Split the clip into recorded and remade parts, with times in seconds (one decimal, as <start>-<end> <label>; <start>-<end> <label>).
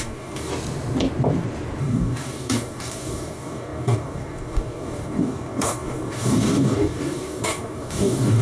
0.0-0.5 remade; 0.5-1.8 recorded; 1.8-8.4 remade